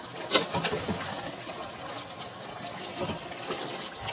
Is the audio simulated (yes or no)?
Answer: no